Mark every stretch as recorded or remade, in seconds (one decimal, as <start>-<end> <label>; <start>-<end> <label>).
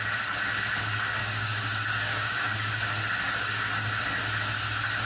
0.0-1.2 recorded; 1.2-4.2 remade; 4.2-5.0 recorded